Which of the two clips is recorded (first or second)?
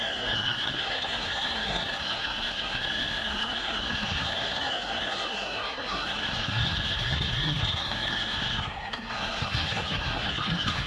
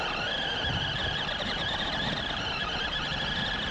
second